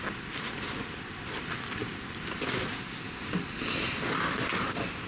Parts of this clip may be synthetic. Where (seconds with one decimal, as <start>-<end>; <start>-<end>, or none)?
none